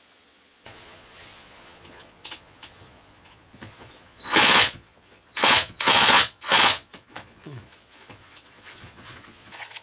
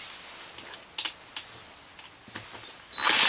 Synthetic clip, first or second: first